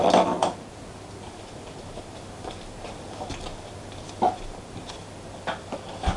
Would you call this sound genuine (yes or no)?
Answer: yes